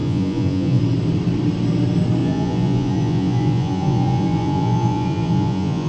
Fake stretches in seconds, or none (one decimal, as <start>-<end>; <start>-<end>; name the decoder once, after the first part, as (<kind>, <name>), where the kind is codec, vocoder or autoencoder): 0.0-0.8 (vocoder, Vocos); 2.2-5.9